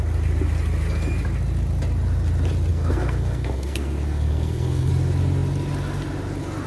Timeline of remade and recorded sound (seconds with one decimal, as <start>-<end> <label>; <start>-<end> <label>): 0.0-2.7 recorded; 2.7-4.9 remade; 4.9-6.7 recorded